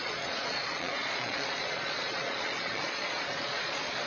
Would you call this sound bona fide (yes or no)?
no